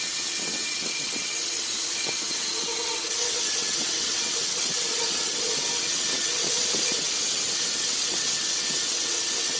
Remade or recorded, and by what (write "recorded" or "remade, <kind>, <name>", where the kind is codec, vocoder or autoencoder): remade, vocoder, WaveNeXt